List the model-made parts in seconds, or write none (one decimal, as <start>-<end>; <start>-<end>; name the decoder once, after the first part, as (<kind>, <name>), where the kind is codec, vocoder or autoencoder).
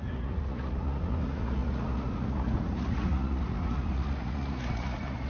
0.0-5.3 (vocoder, Vocos)